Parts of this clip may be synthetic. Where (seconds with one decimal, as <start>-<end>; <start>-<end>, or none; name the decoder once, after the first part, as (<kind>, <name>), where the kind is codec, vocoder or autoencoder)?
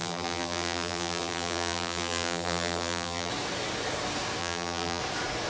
0.0-3.3 (vocoder, BigVGAN v2); 4.4-5.0